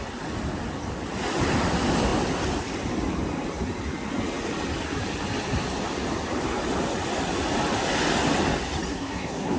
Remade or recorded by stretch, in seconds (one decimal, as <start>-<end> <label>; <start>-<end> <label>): 0.0-8.9 recorded; 8.9-9.6 remade

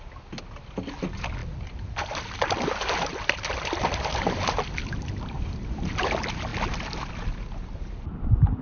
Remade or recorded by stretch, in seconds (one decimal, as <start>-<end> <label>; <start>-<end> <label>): 0.0-1.4 recorded; 1.4-5.0 remade; 5.0-8.6 recorded

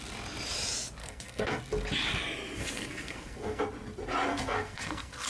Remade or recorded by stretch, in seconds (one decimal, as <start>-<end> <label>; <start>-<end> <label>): 0.0-1.0 recorded; 1.0-1.6 remade; 1.6-2.6 recorded; 2.6-3.6 remade; 3.6-4.3 recorded; 4.3-5.3 remade

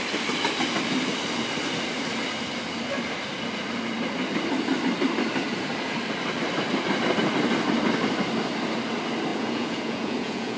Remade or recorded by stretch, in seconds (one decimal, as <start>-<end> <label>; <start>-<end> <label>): 0.0-9.3 recorded; 9.3-10.6 remade

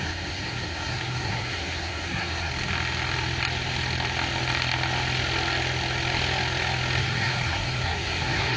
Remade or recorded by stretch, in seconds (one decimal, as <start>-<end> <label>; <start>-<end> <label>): 0.0-2.5 remade; 2.5-7.0 recorded; 7.0-8.6 remade

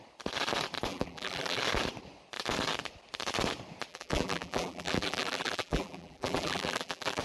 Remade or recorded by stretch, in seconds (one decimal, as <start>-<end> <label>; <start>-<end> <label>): 0.0-0.9 recorded; 0.9-1.6 remade; 1.6-3.9 recorded; 3.9-7.2 remade